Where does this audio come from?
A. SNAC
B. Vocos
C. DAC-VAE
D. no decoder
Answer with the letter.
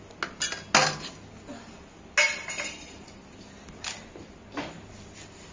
D